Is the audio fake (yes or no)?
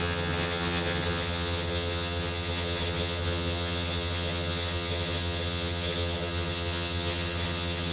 yes